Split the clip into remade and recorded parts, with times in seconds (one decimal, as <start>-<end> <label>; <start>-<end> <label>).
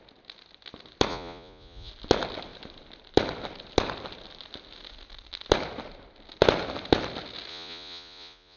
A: 0.0-1.1 recorded; 1.1-1.9 remade; 1.9-7.5 recorded; 7.5-8.6 remade